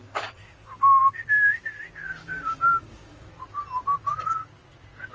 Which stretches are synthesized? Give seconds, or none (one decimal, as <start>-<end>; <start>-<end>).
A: 0.0-1.0; 2.2-3.3